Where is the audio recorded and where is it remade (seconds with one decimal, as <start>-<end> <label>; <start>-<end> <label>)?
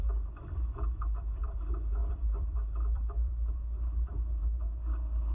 0.0-1.6 remade; 1.6-2.0 recorded; 2.0-3.5 remade; 3.5-5.3 recorded